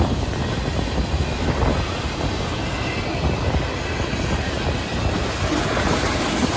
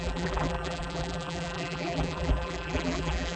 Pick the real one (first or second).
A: first